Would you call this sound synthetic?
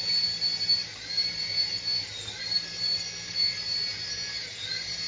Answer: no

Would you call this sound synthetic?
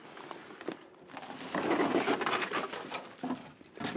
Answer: no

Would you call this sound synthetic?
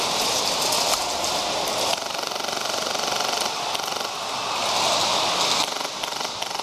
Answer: no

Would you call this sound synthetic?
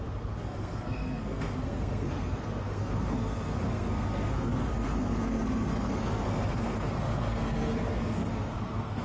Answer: yes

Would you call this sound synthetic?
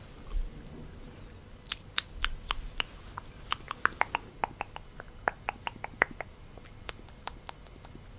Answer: no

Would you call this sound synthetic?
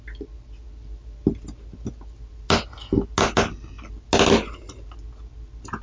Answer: no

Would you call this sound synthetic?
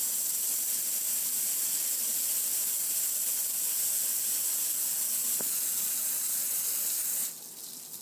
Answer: no